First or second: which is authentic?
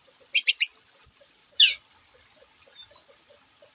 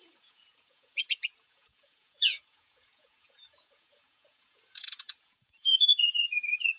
first